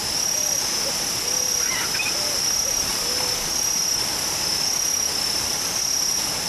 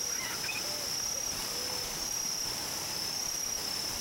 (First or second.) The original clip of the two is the first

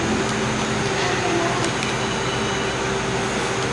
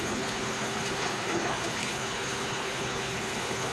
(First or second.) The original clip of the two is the first